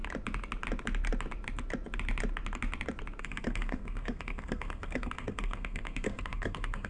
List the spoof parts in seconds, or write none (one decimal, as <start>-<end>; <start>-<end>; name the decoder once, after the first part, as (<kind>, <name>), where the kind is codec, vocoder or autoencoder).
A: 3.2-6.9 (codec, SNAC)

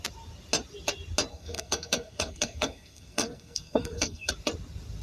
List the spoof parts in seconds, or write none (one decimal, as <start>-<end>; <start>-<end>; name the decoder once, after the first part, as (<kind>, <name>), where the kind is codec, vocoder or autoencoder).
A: 1.3-4.3 (codec, SNAC)

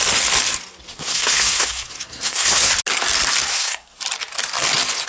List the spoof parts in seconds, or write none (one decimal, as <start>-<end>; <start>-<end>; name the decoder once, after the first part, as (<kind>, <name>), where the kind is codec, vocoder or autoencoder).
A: 0.9-2.7 (codec, SNAC); 3.5-4.0